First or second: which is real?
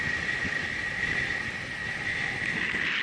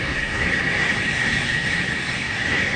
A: first